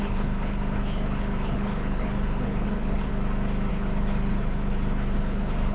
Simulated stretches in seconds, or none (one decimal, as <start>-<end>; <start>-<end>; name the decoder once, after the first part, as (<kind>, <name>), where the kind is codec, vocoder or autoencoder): 0.0-3.1 (codec, HILCodec); 3.7-5.7